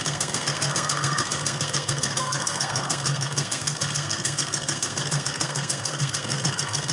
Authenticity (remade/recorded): remade